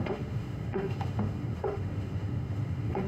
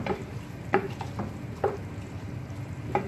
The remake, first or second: first